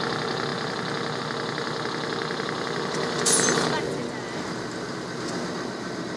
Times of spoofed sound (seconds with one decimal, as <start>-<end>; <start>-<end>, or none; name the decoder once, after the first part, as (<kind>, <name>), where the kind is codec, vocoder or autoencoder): none